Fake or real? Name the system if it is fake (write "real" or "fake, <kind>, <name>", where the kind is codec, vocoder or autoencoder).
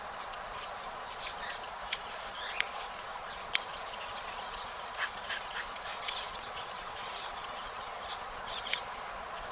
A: fake, vocoder, Vocos